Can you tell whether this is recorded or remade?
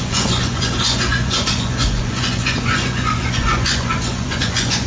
remade